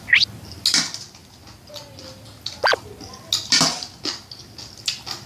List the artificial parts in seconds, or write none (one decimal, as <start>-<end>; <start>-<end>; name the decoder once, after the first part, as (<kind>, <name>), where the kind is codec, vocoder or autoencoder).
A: none